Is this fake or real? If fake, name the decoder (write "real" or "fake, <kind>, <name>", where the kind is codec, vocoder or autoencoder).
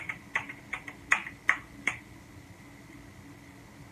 real